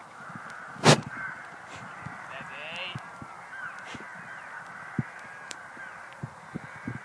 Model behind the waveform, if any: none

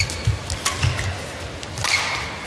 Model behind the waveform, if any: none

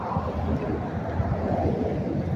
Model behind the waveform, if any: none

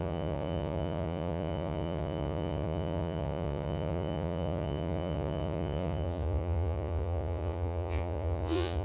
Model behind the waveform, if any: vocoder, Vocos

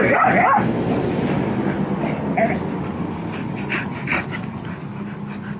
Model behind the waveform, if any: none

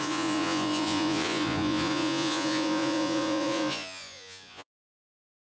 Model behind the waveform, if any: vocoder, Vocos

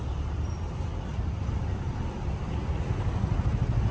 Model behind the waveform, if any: none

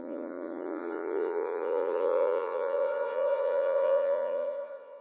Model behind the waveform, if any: vocoder, Vocos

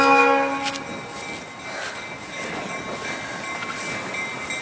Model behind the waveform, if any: none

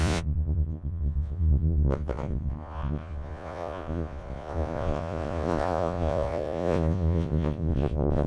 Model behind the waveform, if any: vocoder, Vocos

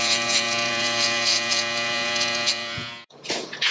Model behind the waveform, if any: vocoder, Vocos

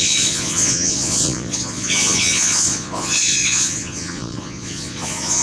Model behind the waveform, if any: vocoder, Vocos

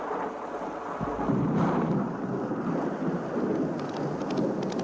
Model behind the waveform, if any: none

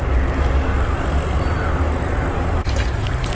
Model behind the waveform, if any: none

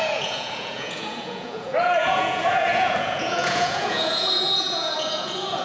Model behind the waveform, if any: vocoder, Vocos